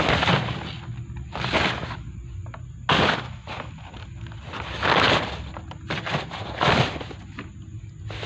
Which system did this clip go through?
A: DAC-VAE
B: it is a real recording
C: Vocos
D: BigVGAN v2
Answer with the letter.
B